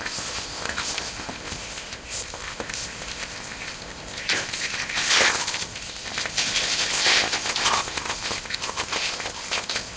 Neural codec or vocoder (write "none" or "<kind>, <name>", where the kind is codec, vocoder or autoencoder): codec, ZipCodec